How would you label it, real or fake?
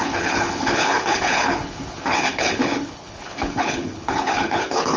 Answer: fake